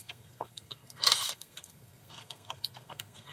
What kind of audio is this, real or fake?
fake